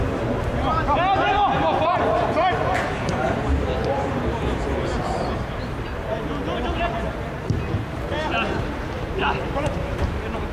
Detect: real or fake real